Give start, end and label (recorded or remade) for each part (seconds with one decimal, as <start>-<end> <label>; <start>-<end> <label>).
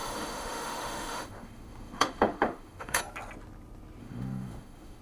0.0-3.0 remade; 3.0-4.0 recorded; 4.0-5.0 remade